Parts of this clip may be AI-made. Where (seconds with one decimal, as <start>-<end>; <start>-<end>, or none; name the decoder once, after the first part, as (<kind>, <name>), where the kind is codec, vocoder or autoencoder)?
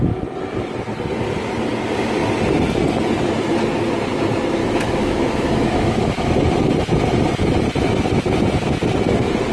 4.6-6.3 (autoencoder, DAC-VAE)